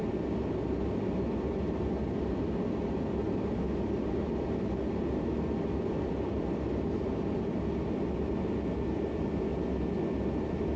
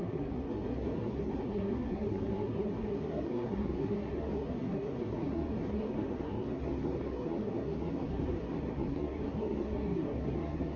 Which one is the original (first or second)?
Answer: first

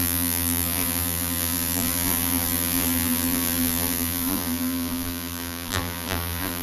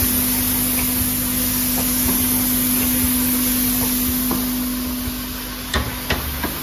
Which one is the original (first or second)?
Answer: second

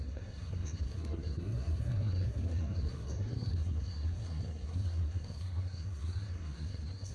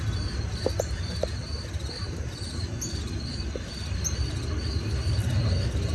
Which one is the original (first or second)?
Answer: second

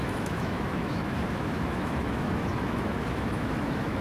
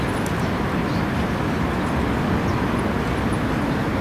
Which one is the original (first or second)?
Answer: second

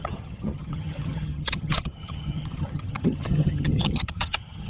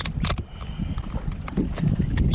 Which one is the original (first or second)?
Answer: second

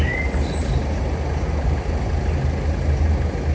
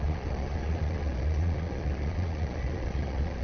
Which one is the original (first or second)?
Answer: first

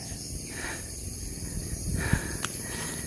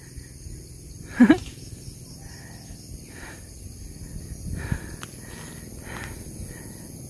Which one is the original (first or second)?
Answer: second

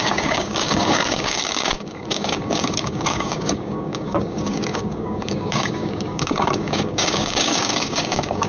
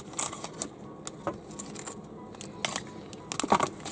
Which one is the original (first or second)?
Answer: second